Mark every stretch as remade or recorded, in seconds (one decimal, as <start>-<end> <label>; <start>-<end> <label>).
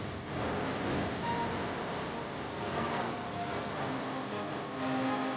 0.0-2.5 recorded; 2.5-3.7 remade; 3.7-5.4 recorded